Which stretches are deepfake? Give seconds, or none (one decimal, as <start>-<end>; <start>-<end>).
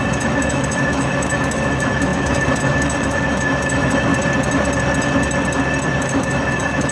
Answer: 0.0-4.1; 6.0-6.9